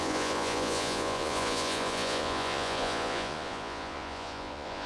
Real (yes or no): no